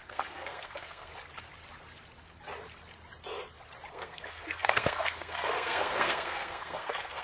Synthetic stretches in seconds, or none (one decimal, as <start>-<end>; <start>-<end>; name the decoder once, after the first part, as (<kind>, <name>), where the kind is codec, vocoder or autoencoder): 0.0-1.1 (codec, SNAC); 3.9-7.2